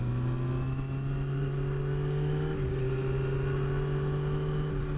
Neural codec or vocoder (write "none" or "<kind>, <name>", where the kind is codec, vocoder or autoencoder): none